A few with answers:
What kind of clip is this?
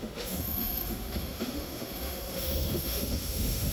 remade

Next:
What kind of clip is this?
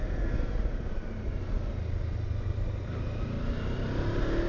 recorded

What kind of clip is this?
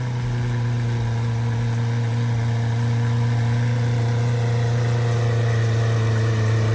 recorded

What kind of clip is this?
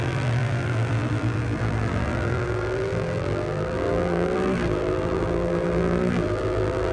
remade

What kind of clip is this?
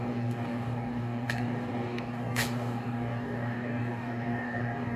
remade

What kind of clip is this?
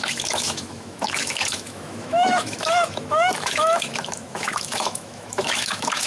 remade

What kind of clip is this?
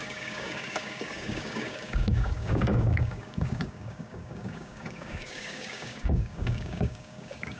remade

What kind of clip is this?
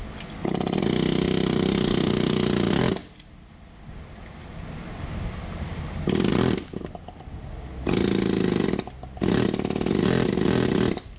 recorded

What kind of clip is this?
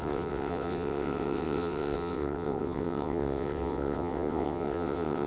remade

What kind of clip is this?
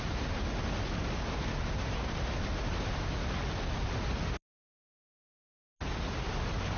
recorded